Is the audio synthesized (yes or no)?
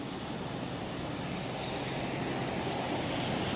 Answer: no